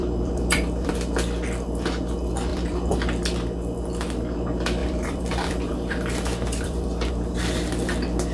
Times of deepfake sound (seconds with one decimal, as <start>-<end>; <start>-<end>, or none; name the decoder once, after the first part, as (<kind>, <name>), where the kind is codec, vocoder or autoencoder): 0.0-0.9 (vocoder, BigVGAN v2); 2.5-3.0; 4.8-7.1